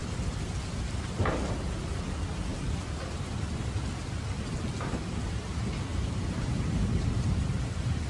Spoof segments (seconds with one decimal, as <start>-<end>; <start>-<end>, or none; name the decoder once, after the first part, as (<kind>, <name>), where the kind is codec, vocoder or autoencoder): 5.9-8.1 (vocoder, BigVGAN v2)